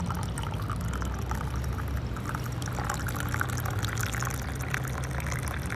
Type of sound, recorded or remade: recorded